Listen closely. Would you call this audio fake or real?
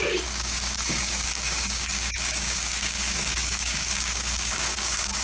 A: fake